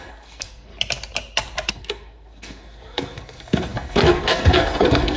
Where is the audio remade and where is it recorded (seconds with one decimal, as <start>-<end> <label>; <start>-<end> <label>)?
0.0-0.7 remade; 0.7-1.7 recorded; 1.7-5.2 remade